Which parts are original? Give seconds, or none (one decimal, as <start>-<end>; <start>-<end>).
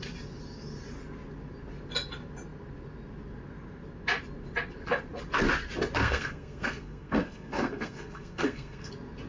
0.0-6.0; 8.9-9.3